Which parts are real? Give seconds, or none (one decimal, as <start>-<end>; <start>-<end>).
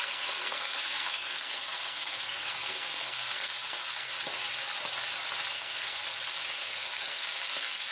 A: 4.1-5.5; 6.0-6.5